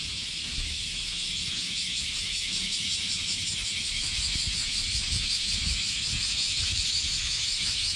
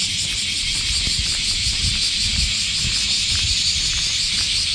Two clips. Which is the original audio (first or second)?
second